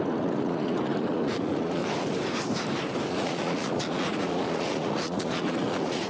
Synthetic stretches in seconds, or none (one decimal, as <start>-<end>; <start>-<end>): 0.0-1.8; 3.1-6.1